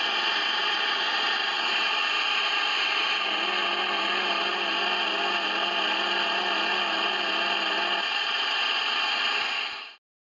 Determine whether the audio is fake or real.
real